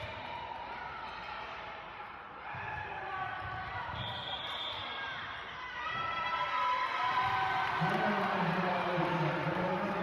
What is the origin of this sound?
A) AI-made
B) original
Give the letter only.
A